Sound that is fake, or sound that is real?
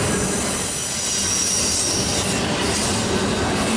real